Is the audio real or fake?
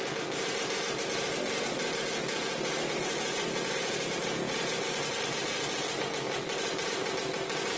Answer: real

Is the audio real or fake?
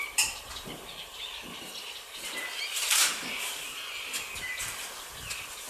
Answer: real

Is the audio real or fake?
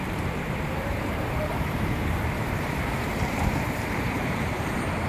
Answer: fake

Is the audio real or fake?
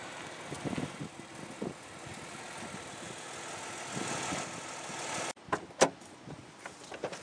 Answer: real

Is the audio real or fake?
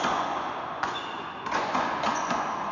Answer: fake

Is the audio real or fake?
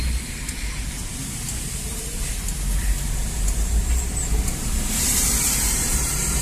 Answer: fake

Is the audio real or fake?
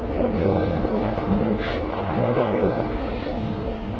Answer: fake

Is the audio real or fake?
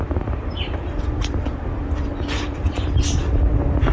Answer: fake